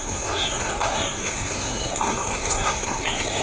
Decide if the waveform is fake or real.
fake